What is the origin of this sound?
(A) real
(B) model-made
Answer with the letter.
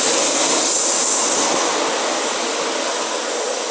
A